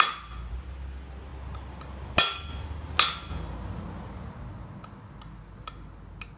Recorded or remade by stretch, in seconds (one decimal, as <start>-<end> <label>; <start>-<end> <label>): 0.0-6.4 recorded